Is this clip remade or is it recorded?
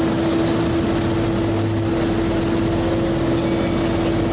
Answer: recorded